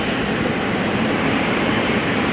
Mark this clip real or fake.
fake